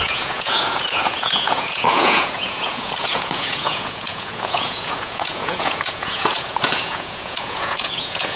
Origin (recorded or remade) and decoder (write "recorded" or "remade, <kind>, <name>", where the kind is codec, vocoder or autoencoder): remade, vocoder, Vocos